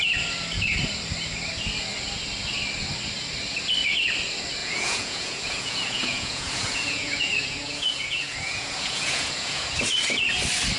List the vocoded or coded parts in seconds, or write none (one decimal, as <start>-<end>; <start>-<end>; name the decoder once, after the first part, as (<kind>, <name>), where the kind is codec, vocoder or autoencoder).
4.6-9.7 (vocoder, Vocos)